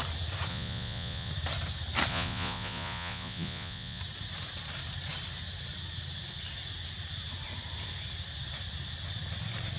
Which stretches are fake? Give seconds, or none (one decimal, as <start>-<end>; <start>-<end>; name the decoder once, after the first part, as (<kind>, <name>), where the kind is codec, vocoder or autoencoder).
0.5-1.3 (vocoder, Vocos); 2.1-4.0